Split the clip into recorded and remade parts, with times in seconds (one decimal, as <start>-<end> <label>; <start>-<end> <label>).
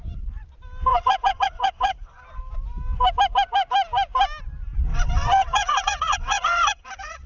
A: 0.0-0.9 recorded; 0.9-2.2 remade; 2.2-4.9 recorded; 4.9-7.3 remade